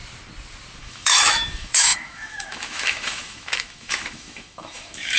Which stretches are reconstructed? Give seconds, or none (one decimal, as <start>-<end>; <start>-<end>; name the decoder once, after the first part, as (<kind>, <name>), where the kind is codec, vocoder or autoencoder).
0.8-5.2 (autoencoder, DAC-VAE)